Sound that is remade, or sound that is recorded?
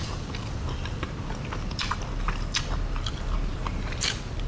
recorded